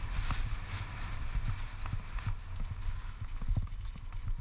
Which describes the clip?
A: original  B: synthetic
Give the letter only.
A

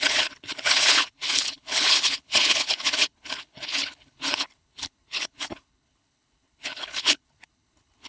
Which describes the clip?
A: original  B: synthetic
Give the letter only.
B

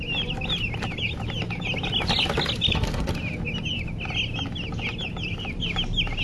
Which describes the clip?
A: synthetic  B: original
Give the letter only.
B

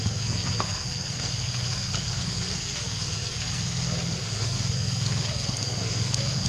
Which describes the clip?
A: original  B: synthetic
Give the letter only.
B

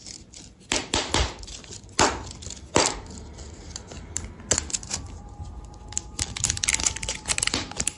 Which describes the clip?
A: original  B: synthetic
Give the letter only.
A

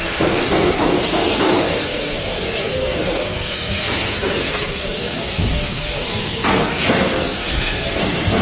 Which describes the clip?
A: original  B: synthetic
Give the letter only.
B